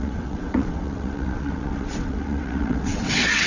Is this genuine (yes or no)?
no